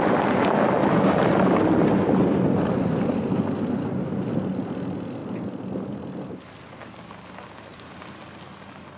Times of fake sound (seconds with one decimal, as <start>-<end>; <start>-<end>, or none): none

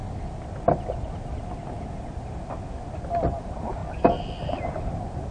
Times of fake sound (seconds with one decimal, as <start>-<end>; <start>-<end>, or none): none

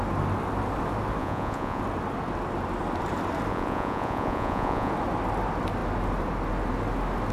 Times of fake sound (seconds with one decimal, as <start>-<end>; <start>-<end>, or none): 1.2-1.8; 3.5-4.9

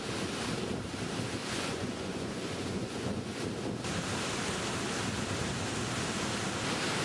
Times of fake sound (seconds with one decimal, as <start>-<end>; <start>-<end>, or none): 1.4-3.4

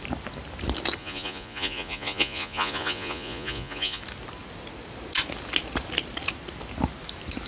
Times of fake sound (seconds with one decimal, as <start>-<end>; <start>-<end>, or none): 1.0-4.0

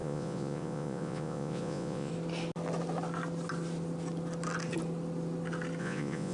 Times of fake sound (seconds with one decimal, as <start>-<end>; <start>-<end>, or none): 0.0-2.1; 5.8-6.3

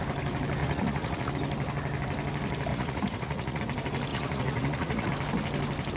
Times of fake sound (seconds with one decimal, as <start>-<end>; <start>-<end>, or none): 0.6-1.3; 2.7-3.6; 4.1-5.1